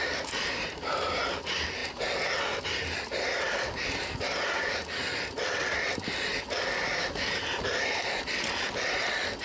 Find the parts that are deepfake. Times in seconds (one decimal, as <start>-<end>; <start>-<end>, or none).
none